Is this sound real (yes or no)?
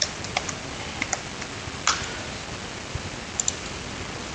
yes